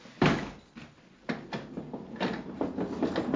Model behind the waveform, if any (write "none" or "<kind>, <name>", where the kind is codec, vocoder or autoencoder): none